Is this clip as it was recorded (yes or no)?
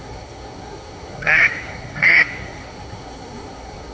no